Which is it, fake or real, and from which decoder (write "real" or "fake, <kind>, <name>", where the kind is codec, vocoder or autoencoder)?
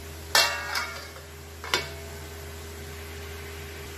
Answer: real